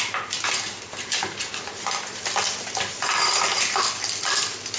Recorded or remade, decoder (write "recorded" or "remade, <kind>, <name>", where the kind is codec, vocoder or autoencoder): recorded